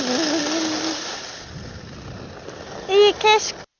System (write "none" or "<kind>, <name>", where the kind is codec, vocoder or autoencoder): none